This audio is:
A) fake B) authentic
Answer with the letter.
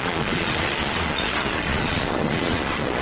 A